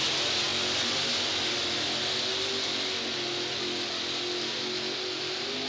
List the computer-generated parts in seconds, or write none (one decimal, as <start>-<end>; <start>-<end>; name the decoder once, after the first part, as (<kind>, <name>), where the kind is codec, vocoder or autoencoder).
none